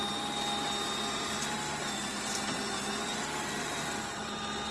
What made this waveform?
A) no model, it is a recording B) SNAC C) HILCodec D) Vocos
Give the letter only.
A